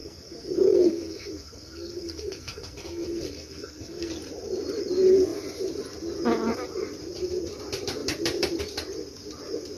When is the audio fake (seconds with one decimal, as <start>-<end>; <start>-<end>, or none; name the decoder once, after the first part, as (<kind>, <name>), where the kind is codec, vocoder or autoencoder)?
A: 0.0-4.1 (codec, SNAC)